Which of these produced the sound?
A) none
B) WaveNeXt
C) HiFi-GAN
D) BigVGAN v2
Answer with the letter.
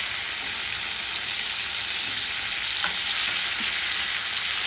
A